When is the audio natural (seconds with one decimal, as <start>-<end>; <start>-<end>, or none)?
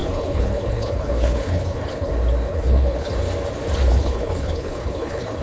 2.1-2.5; 3.1-3.9